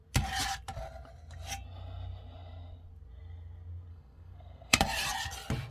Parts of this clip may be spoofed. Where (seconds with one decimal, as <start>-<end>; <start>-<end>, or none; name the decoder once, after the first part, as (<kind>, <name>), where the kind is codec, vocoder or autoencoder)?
3.9-4.8 (codec, SNAC)